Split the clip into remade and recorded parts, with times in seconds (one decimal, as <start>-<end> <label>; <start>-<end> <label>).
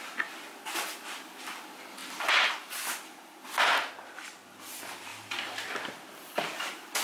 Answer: 0.0-2.0 recorded; 2.0-2.5 remade; 2.5-5.1 recorded; 5.1-6.4 remade; 6.4-7.0 recorded